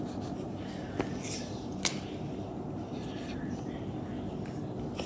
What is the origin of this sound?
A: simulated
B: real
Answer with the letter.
B